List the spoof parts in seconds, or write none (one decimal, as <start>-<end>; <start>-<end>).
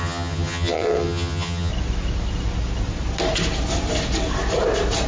0.0-1.7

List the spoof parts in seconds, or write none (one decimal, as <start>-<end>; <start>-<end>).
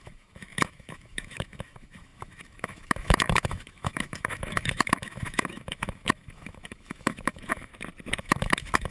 0.0-7.7; 8.2-8.9